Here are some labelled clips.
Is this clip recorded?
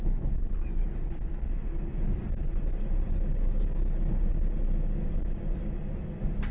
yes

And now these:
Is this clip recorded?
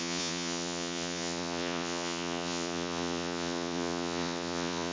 no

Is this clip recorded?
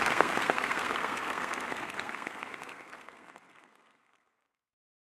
no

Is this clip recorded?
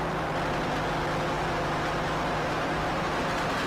yes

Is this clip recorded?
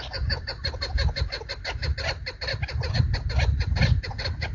yes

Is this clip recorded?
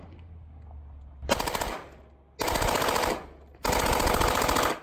yes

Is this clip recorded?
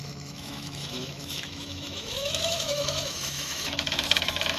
no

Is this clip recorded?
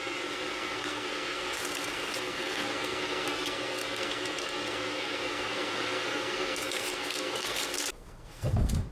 no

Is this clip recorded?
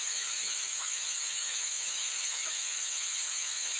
no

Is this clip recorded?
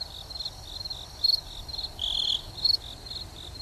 yes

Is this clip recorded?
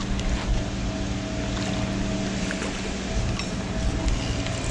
yes